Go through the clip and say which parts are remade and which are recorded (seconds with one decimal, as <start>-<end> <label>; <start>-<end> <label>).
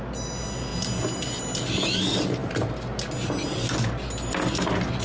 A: 0.0-5.0 recorded